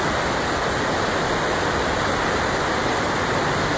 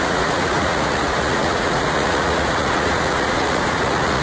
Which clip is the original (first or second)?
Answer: first